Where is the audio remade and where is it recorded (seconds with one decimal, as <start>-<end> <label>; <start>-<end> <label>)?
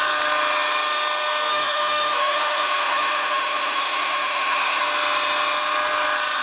0.0-1.5 recorded; 1.5-4.8 remade; 4.8-6.4 recorded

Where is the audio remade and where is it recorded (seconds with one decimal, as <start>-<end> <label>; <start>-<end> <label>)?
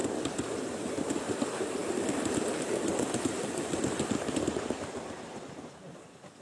0.0-6.4 recorded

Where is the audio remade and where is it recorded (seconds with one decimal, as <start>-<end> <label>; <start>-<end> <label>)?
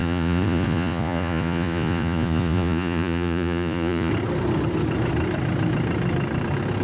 0.0-4.1 remade; 4.1-6.8 recorded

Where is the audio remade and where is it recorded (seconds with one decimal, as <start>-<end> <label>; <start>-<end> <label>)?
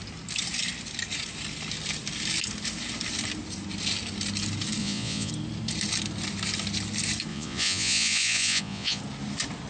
0.0-4.8 recorded; 4.8-5.3 remade; 5.3-7.3 recorded; 7.3-9.0 remade; 9.0-9.7 recorded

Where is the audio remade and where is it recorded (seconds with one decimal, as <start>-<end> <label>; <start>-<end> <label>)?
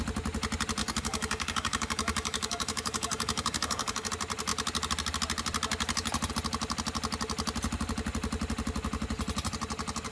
0.0-0.8 recorded; 0.8-4.1 remade; 4.1-10.1 recorded